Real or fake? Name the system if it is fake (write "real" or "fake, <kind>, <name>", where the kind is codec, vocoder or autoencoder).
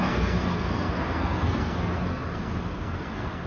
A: fake, codec, SNAC